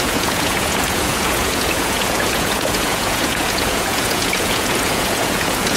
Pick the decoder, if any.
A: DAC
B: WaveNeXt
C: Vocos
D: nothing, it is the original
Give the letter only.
C